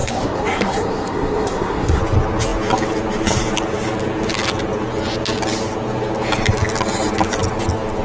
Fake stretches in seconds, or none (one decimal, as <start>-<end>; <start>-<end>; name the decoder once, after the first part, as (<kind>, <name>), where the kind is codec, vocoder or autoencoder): 0.0-2.0 (codec, SNAC)

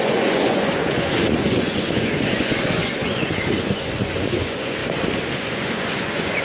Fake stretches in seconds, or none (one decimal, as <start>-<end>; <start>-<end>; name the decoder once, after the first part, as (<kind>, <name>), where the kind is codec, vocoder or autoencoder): 0.0-4.8 (vocoder, Vocos); 5.4-6.4

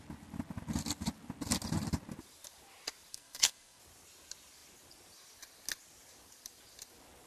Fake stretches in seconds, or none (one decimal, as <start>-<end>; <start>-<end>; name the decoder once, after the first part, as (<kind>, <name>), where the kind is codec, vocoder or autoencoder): 3.1-3.8 (codec, SNAC)

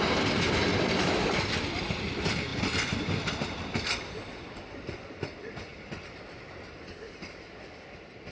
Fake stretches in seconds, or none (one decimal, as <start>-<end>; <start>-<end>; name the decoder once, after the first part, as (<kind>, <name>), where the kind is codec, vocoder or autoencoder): 2.5-4.6 (vocoder, BigVGAN v2); 5.7-6.2

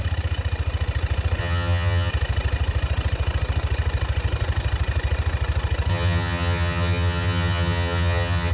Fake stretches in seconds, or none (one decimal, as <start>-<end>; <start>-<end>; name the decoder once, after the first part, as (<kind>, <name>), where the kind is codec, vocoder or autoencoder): 1.4-2.1 (vocoder, HiFi-GAN); 5.9-8.5

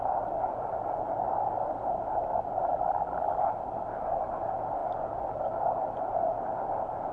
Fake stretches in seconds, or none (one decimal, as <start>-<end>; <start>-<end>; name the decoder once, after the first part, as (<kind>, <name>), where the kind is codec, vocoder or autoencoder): 2.7-3.4 (vocoder, BigVGAN v2)

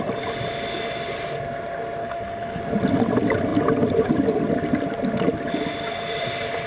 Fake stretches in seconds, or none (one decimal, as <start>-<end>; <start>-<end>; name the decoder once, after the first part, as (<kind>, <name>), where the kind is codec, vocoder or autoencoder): 2.0-2.6 (codec, HILCodec)

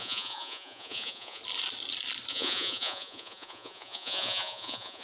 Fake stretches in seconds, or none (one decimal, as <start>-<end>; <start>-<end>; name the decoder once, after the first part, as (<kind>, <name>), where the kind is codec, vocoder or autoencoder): 0.0-1.4 (vocoder, Vocos); 2.3-5.0